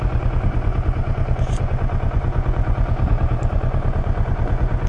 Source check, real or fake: fake